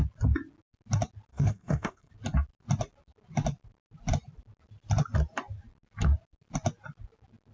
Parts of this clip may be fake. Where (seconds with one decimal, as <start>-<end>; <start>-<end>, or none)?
1.3-2.1